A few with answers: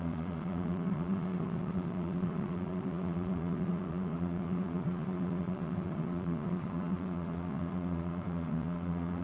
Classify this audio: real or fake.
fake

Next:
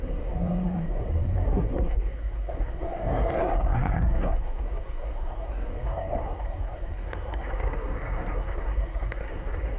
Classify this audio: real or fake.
fake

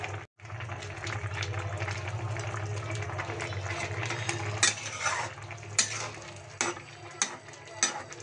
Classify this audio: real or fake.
real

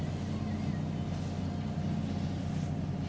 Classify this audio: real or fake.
real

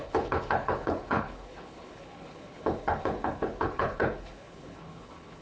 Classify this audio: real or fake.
fake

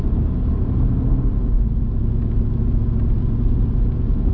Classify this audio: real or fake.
real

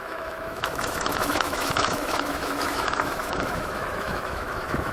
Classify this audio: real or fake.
fake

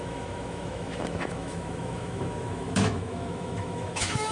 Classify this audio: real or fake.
fake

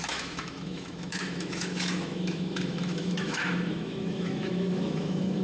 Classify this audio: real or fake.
fake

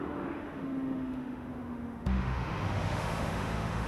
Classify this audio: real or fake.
fake